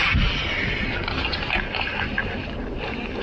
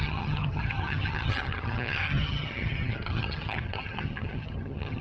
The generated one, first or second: second